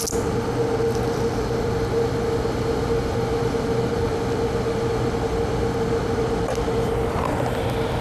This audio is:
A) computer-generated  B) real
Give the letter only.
B